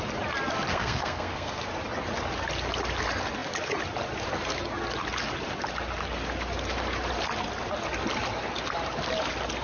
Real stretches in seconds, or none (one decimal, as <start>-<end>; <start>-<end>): 0.0-0.7; 1.6-9.6